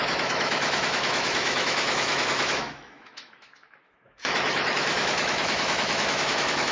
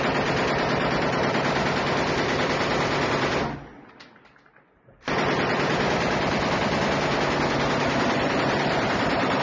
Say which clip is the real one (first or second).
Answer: second